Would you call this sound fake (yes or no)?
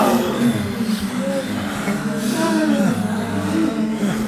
no